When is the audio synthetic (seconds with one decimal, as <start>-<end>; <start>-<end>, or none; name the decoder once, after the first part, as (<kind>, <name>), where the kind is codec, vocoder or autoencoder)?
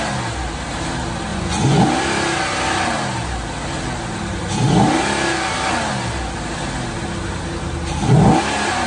1.3-1.8 (vocoder, Vocos)